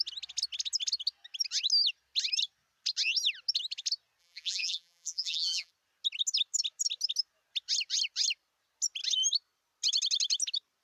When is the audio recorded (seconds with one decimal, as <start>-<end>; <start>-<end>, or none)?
0.0-4.2; 5.7-10.8